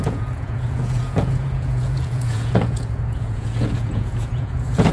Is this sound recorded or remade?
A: remade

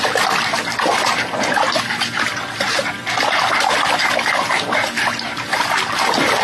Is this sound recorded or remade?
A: recorded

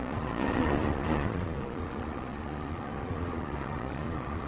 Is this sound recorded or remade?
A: remade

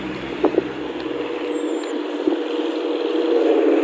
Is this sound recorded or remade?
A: recorded